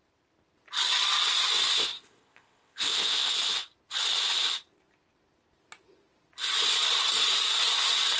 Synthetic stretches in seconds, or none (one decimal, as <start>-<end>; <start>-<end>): 1.7-3.3